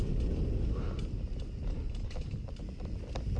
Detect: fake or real real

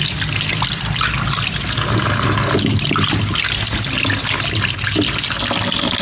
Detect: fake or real real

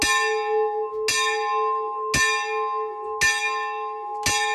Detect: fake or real real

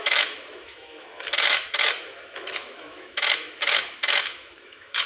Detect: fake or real fake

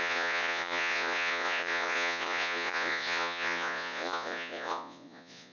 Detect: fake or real fake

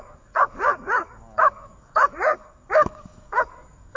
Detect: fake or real fake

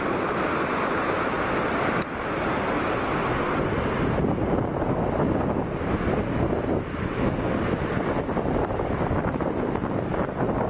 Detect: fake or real real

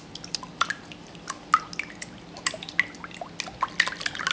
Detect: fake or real real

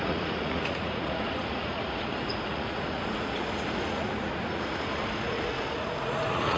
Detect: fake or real fake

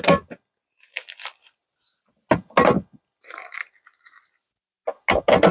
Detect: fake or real real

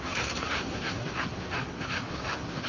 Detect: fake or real fake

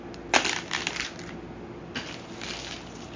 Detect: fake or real real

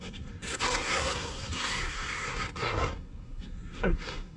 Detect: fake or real fake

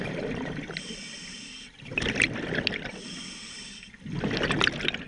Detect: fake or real real